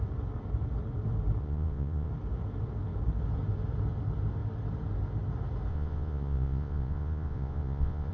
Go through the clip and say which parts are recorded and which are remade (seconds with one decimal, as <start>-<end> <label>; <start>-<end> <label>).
0.0-1.4 recorded; 1.4-2.1 remade; 2.1-5.7 recorded; 5.7-8.1 remade